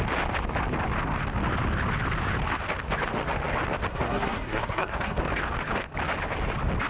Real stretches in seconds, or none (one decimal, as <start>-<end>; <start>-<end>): 0.0-3.9; 5.2-6.9